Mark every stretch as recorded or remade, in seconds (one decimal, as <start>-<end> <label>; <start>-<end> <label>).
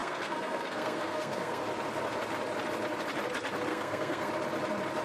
0.0-1.6 remade; 1.6-3.7 recorded; 3.7-4.3 remade; 4.3-5.0 recorded